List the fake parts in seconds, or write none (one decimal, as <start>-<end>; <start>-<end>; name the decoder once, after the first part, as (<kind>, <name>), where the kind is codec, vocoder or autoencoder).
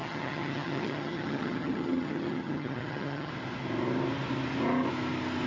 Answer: 0.0-3.3 (vocoder, HiFi-GAN)